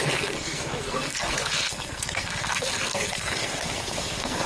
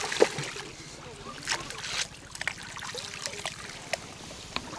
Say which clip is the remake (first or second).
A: first